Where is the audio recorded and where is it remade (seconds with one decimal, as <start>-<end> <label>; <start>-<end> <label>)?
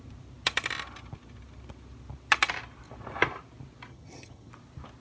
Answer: 0.0-3.9 recorded; 3.9-4.5 remade; 4.5-5.0 recorded